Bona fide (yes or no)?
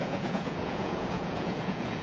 no